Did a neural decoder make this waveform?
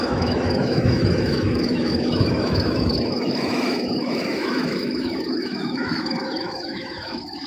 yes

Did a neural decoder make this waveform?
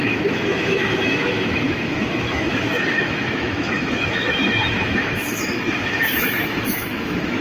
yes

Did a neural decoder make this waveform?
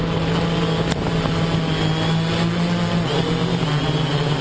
no